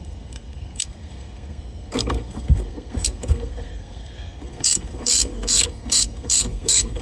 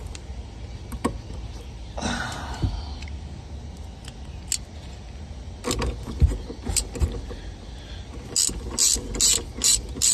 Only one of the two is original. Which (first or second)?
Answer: second